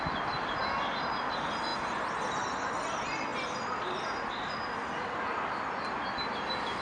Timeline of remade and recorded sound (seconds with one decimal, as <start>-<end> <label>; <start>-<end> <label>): 0.0-6.8 recorded